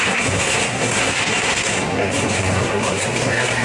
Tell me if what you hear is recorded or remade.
remade